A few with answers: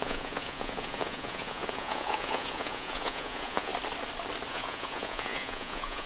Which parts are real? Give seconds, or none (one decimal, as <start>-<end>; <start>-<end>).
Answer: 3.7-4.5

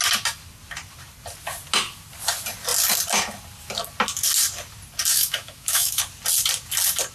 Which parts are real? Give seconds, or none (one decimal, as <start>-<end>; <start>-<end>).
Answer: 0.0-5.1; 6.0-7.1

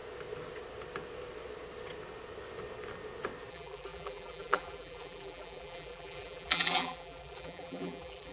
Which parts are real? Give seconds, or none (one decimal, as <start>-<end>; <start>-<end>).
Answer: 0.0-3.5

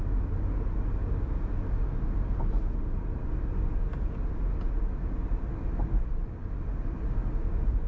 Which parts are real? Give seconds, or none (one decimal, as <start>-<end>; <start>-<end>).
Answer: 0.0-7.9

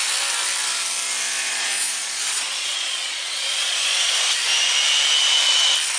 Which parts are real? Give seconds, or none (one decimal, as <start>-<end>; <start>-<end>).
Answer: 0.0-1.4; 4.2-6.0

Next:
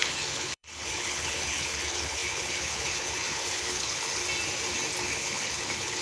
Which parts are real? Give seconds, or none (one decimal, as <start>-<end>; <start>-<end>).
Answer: 4.2-5.0

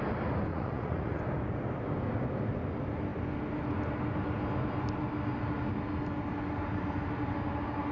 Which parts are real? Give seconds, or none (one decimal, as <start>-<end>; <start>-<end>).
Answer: 0.0-0.5; 1.2-7.9